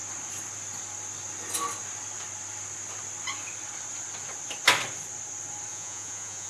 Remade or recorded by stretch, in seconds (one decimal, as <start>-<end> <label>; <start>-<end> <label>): 0.0-5.7 recorded; 5.7-6.5 remade